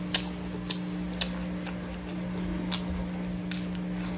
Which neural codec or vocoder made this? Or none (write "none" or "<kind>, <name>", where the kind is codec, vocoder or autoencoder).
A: none